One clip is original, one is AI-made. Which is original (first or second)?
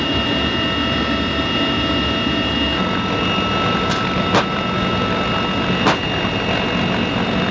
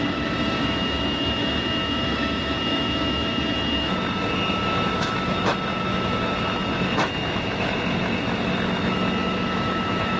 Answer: first